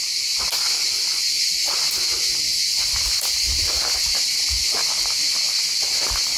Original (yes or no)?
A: yes